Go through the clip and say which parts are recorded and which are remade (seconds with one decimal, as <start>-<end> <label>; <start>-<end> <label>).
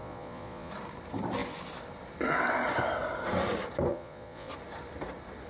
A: 0.0-0.7 remade; 0.7-3.9 recorded; 3.9-4.5 remade; 4.5-5.5 recorded